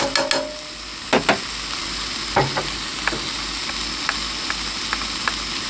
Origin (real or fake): real